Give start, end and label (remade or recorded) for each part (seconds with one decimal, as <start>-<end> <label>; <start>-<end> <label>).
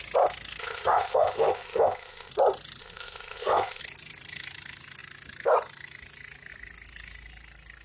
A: 0.0-0.6 recorded; 0.6-2.3 remade; 2.3-2.8 recorded; 2.8-3.8 remade; 3.8-7.8 recorded